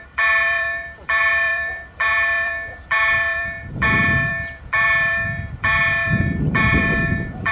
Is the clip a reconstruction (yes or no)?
yes